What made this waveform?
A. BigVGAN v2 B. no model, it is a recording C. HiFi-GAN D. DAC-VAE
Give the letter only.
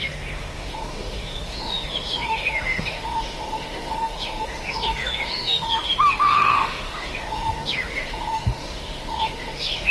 D